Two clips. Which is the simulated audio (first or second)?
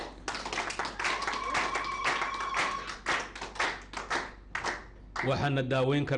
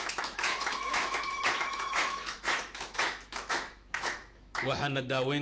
second